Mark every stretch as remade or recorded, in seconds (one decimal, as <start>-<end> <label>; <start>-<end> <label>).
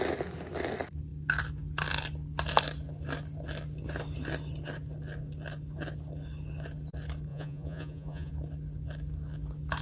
0.0-7.3 recorded; 7.3-8.3 remade; 8.3-9.8 recorded